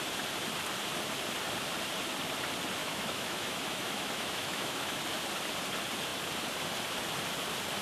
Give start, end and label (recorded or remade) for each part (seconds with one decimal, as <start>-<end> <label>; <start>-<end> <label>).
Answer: 0.0-2.8 recorded; 2.8-5.0 remade; 5.0-7.8 recorded